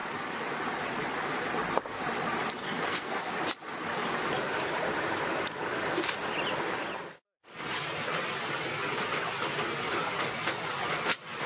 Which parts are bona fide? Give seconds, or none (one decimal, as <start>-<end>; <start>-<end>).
0.0-2.6; 3.2-11.5